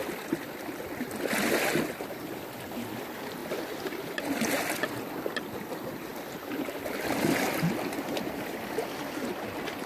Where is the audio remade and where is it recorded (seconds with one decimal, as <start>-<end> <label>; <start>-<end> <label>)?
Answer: 0.0-9.9 recorded